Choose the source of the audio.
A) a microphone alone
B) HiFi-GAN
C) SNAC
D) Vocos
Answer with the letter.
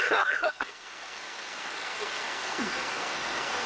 C